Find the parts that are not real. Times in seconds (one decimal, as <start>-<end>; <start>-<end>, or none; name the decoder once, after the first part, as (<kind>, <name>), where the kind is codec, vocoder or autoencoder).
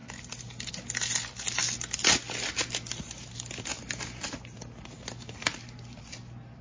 none